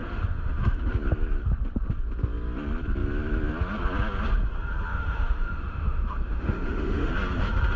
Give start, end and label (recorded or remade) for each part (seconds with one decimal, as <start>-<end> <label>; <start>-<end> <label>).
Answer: 0.0-0.9 remade; 0.9-4.9 recorded; 4.9-7.1 remade; 7.1-7.8 recorded